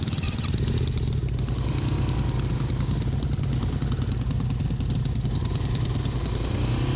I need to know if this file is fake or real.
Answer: real